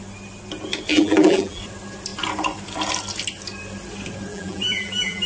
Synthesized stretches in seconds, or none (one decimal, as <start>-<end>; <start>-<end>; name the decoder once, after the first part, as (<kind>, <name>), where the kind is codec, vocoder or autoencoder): 0.9-1.6 (vocoder, BigVGAN v2); 4.3-5.3